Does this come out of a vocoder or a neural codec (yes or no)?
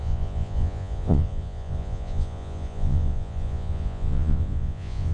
yes